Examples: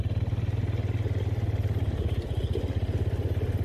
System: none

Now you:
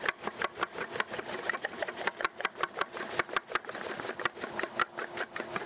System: none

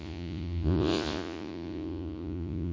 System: vocoder, Vocos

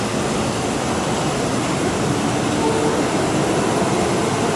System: none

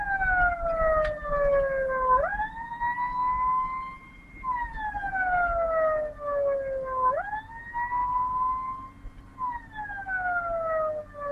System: none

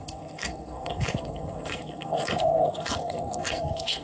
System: codec, SNAC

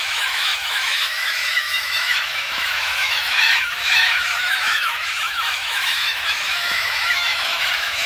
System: autoencoder, DAC-VAE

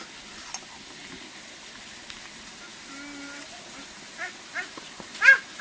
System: none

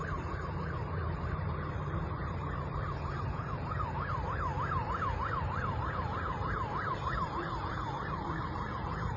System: vocoder, BigVGAN v2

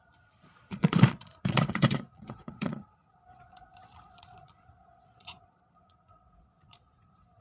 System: vocoder, Vocos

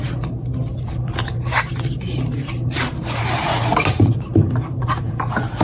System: vocoder, BigVGAN v2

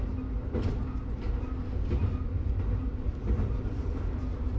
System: none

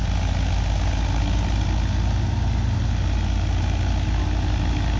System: none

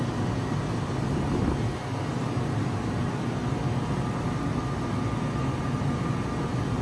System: none